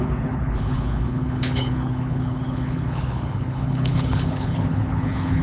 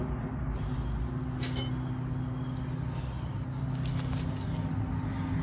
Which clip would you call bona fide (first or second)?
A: second